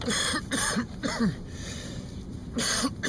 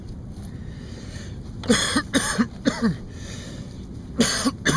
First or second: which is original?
second